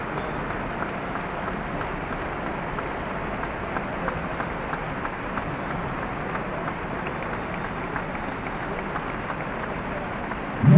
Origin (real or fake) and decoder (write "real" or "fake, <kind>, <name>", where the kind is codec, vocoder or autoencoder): real